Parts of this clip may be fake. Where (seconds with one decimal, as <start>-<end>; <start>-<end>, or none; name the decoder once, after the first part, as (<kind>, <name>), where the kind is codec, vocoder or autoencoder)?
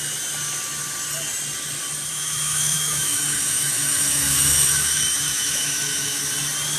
2.1-6.2 (autoencoder, DAC-VAE)